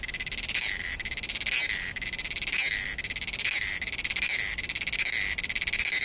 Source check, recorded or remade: recorded